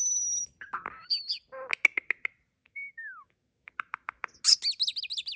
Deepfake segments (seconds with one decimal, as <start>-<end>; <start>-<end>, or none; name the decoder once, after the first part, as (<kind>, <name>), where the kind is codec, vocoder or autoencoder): 2.6-3.7 (autoencoder, DAC-VAE)